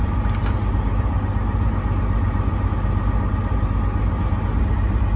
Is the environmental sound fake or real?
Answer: real